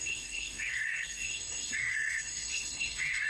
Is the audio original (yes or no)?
no